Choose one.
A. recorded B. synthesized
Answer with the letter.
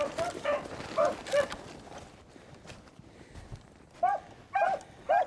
B